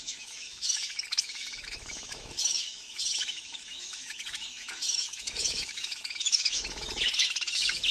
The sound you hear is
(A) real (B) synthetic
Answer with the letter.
B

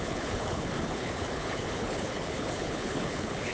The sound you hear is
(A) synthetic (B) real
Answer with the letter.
A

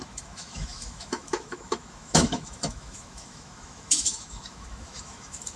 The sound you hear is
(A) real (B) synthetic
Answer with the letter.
B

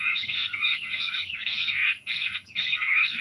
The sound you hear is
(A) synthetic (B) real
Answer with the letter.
A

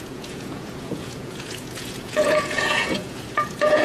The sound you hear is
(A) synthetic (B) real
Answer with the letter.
A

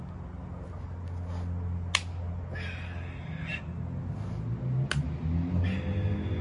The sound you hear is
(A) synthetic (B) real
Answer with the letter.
B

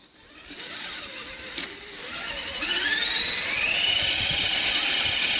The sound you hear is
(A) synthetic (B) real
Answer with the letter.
B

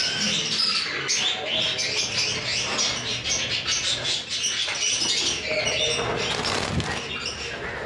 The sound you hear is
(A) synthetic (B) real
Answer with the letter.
B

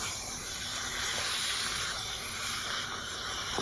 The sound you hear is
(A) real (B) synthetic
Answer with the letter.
B